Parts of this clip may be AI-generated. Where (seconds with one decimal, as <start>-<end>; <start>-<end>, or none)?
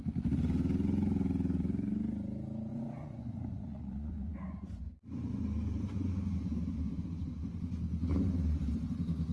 2.7-4.8